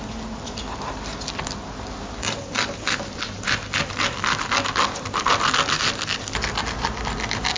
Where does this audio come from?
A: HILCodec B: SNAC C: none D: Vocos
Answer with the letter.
C